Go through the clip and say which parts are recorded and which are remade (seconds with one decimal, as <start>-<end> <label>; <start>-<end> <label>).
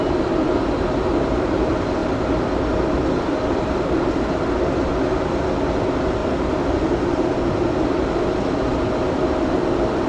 0.0-10.1 recorded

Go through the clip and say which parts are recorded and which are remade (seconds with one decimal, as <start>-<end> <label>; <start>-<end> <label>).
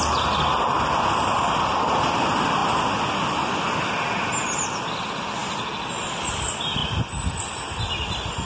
0.0-8.5 recorded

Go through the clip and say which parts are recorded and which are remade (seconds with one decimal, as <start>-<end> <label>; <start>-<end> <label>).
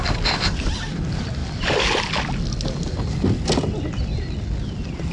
0.0-5.1 recorded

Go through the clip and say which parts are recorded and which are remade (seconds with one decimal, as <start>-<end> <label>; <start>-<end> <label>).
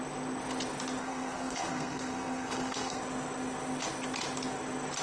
0.0-1.0 recorded; 1.0-3.0 remade; 3.0-5.0 recorded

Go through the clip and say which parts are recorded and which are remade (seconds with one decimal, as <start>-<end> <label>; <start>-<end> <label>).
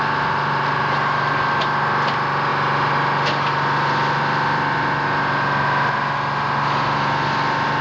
0.0-7.8 recorded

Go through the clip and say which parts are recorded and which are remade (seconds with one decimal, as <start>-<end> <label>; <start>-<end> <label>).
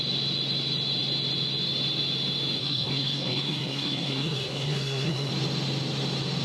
0.0-2.6 recorded; 2.6-5.3 remade; 5.3-6.4 recorded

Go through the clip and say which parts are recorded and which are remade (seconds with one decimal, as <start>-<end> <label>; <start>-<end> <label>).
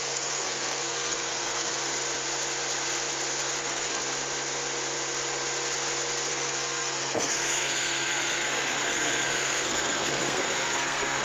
0.0-1.8 remade; 1.8-3.6 recorded; 3.6-4.0 remade; 4.0-6.3 recorded; 6.3-11.2 remade